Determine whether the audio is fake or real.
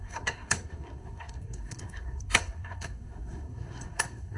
fake